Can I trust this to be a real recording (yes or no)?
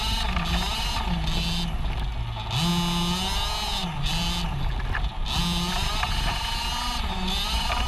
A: yes